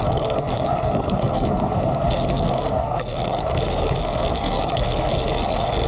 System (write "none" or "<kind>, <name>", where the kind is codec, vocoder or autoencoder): codec, SNAC